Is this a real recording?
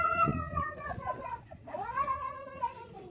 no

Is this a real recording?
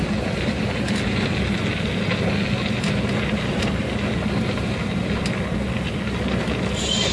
yes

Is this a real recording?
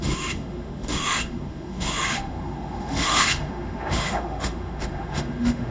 no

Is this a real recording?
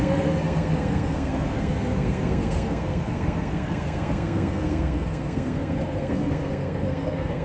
no